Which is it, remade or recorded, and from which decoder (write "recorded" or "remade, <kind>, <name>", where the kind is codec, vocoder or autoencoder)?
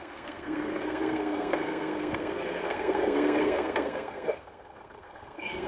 remade, codec, SNAC